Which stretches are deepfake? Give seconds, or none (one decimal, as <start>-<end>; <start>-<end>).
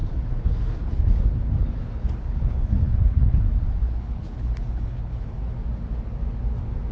0.0-3.4; 3.8-5.4